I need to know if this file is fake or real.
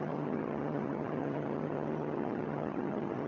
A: fake